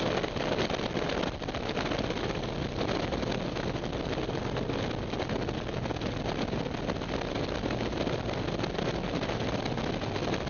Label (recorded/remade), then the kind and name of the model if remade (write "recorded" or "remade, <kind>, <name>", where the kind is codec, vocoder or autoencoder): recorded